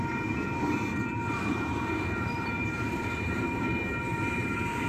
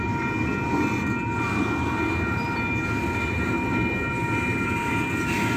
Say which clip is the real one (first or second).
second